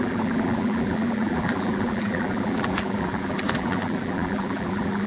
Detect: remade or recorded remade